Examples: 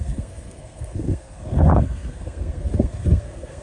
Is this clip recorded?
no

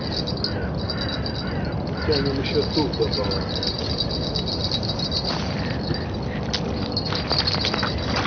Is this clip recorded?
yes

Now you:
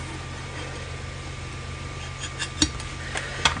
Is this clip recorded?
yes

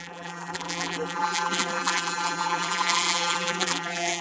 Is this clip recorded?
no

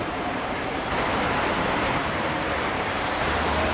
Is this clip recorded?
no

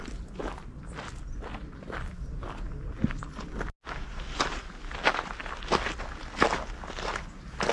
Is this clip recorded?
yes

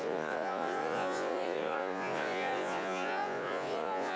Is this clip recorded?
no